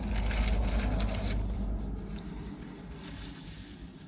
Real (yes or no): yes